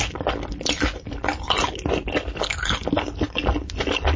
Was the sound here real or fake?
real